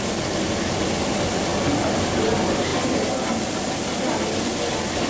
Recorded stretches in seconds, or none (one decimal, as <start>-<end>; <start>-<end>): 0.0-5.1